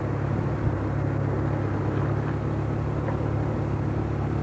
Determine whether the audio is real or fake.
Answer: real